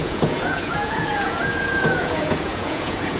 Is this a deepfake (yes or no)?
yes